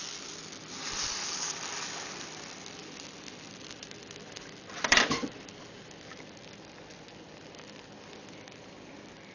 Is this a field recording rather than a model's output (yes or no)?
yes